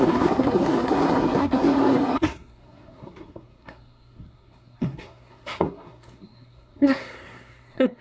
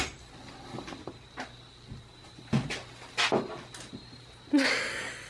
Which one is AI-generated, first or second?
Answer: first